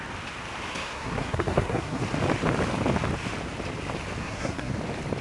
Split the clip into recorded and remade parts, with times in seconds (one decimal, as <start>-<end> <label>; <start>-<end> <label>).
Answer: 0.0-0.7 recorded; 0.7-2.0 remade; 2.0-4.2 recorded; 4.2-4.7 remade; 4.7-5.2 recorded